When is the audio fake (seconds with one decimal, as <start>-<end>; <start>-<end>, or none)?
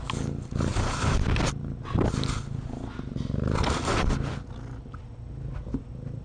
none